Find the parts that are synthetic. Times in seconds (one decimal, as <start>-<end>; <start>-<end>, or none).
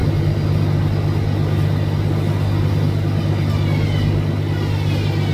none